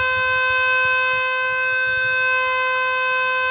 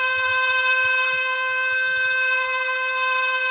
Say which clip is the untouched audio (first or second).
first